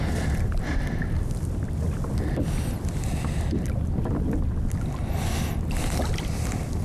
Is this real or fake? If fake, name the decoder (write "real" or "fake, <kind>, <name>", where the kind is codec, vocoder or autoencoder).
real